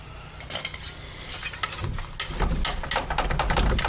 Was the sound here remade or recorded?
recorded